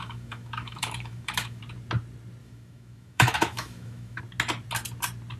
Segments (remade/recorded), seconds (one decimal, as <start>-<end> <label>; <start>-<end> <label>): 0.0-1.6 remade; 1.6-2.4 recorded; 2.4-4.2 remade; 4.2-5.4 recorded